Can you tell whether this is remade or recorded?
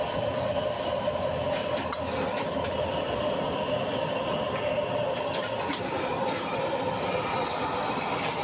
remade